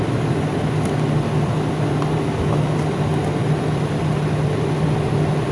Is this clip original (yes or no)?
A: yes